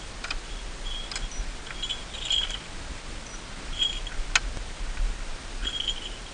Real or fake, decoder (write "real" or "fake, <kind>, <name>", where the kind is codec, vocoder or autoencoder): real